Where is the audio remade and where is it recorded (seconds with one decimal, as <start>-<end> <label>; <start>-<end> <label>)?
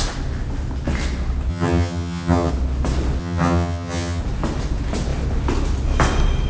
0.0-1.5 recorded; 1.5-2.5 remade; 2.5-3.2 recorded; 3.2-4.2 remade; 4.2-6.5 recorded